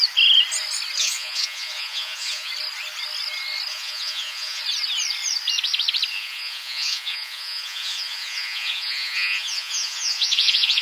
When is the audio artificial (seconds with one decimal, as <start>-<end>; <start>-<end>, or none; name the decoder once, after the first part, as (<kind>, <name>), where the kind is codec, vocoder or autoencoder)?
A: 1.0-2.5 (vocoder, Vocos); 3.7-4.6; 6.1-10.8